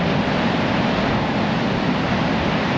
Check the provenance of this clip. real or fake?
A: real